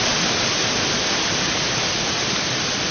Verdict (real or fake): real